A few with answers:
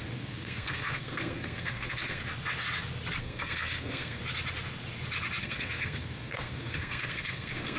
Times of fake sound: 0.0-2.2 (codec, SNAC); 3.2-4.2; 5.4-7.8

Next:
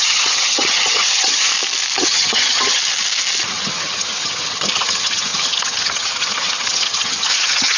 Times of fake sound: 0.0-1.5 (vocoder, HiFi-GAN); 2.0-2.8; 3.5-7.8

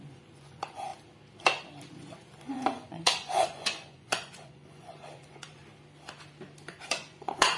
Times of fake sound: 0.0-0.9 (vocoder, Vocos); 2.5-5.6; 6.8-7.6

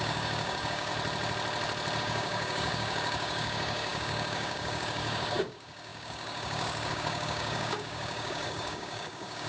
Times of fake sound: 0.0-0.9 (codec, DAC); 2.0-9.5

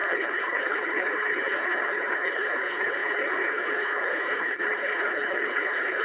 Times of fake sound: 0.0-6.0 (codec, HILCodec)

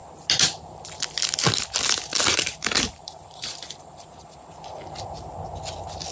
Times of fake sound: 2.1-4.6 (vocoder, BigVGAN v2)

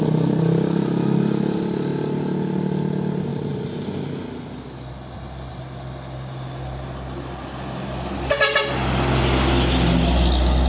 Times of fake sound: none